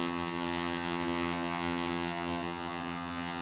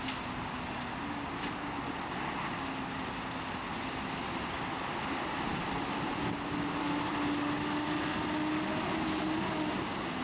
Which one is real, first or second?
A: second